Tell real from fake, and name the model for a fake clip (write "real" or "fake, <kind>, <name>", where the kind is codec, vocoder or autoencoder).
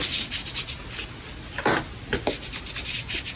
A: real